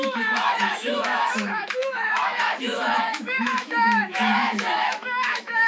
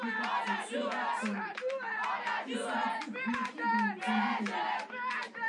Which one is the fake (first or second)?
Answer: first